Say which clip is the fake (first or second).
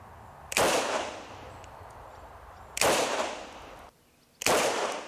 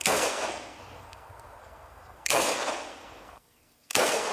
second